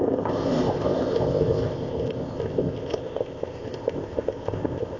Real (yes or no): no